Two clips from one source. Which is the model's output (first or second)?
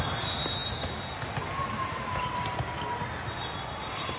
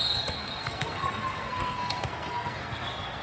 second